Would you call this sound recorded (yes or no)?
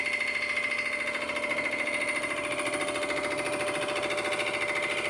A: yes